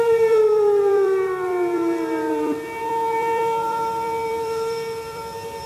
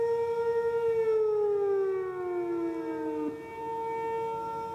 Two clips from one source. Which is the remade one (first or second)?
first